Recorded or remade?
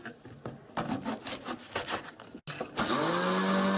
recorded